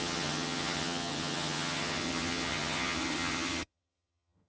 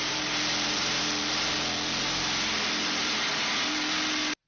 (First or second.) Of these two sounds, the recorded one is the second